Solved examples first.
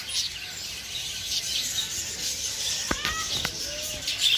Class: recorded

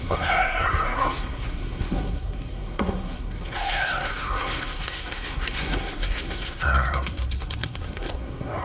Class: remade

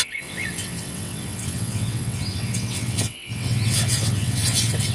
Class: remade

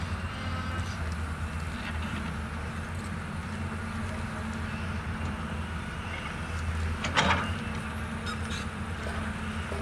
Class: recorded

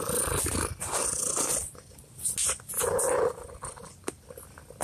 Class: recorded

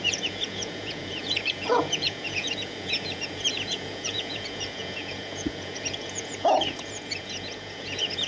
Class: remade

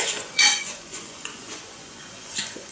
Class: remade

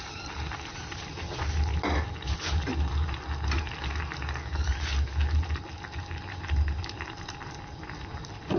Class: recorded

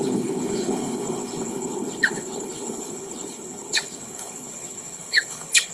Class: remade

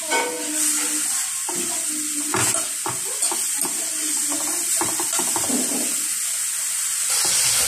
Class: recorded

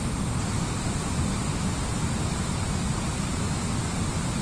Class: recorded